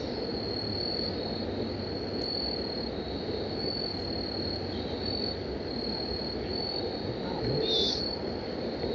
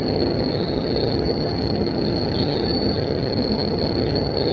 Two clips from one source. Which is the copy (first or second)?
second